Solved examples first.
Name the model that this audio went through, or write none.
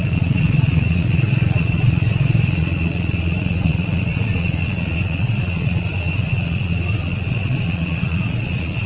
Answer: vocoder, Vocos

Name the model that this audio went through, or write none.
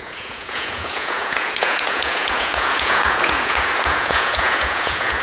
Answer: vocoder, Vocos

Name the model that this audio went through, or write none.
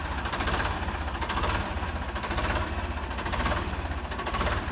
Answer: none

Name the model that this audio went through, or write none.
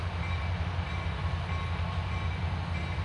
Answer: none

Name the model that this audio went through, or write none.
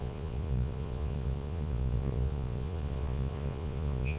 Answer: vocoder, Vocos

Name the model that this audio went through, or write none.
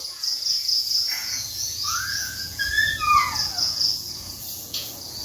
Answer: vocoder, Vocos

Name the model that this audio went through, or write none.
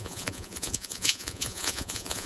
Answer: vocoder, Vocos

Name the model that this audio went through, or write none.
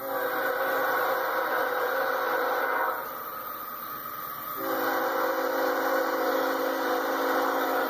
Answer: none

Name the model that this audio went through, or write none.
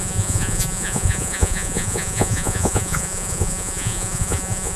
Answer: vocoder, Vocos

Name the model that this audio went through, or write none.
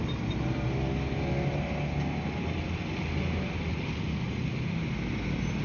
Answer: none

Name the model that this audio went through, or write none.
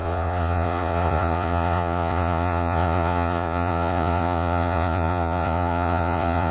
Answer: vocoder, Vocos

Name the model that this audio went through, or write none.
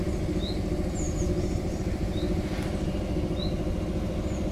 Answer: none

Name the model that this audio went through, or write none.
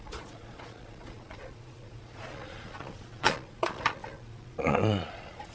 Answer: vocoder, Vocos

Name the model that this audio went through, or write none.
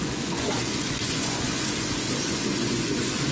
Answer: vocoder, Vocos